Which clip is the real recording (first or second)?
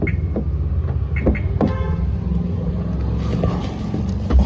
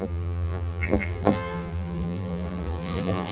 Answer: first